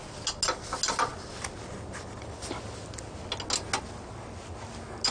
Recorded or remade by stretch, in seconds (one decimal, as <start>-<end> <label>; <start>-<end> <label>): 0.0-5.1 recorded